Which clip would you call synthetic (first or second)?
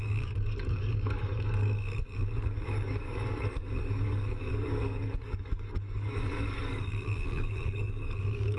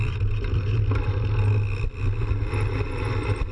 first